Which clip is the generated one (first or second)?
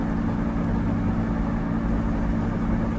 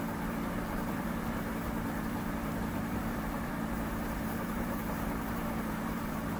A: second